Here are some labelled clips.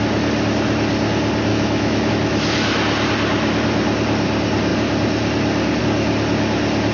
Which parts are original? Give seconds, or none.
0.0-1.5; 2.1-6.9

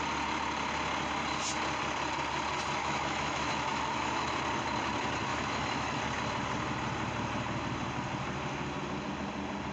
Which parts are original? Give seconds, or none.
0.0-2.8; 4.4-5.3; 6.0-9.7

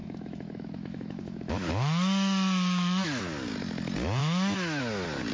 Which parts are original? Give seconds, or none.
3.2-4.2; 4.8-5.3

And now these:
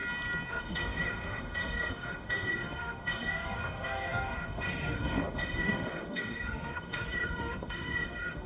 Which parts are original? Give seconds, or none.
0.0-0.5

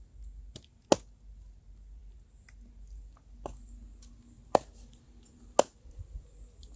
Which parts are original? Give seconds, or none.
0.0-6.8